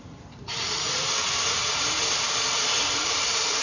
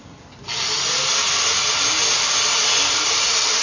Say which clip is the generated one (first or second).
first